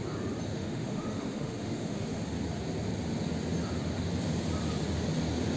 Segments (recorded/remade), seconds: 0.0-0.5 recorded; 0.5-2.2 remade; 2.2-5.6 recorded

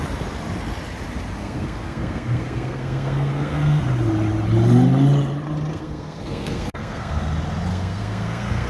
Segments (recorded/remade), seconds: 0.0-1.4 recorded; 1.4-3.8 remade; 3.8-5.7 recorded; 5.7-7.2 remade; 7.2-7.7 recorded; 7.7-8.7 remade

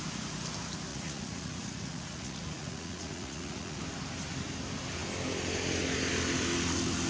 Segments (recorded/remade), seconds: 0.0-0.9 recorded; 0.9-3.8 remade; 3.8-7.1 recorded

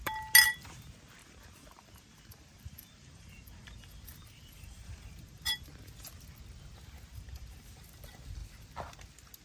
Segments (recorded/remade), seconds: 0.0-1.2 recorded; 1.2-5.6 remade; 5.6-7.1 recorded; 7.1-7.8 remade; 7.8-9.4 recorded

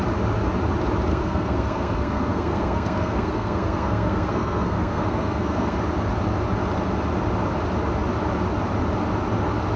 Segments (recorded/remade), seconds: 0.0-1.1 recorded; 1.1-5.8 remade; 5.8-9.8 recorded

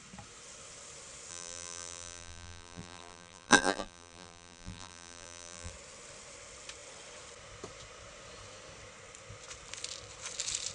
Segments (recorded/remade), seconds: 0.0-1.3 recorded; 1.3-5.7 remade; 5.7-10.7 recorded

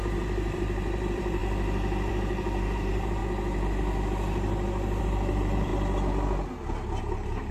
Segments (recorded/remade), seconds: 0.0-1.4 remade; 1.4-2.1 recorded; 2.1-3.2 remade; 3.2-5.0 recorded; 5.0-5.7 remade; 5.7-7.0 recorded; 7.0-7.5 remade

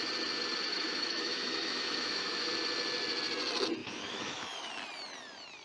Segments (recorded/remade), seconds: 0.0-0.7 recorded; 0.7-2.5 remade; 2.5-3.8 recorded; 3.8-4.7 remade; 4.7-5.6 recorded